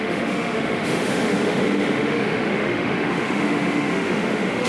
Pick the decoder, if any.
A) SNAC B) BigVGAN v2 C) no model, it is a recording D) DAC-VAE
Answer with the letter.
D